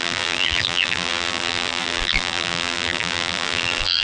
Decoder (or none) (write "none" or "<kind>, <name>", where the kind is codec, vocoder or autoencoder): vocoder, BigVGAN v2